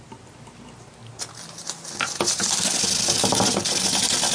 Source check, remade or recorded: recorded